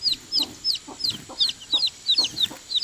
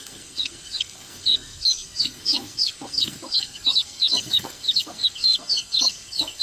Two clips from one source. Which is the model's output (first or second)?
second